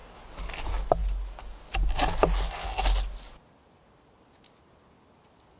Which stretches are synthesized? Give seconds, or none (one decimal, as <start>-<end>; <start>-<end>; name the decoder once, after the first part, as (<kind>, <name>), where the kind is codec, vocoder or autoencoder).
none